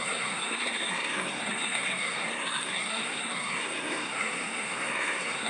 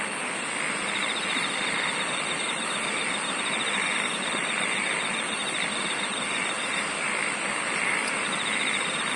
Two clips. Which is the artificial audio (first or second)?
first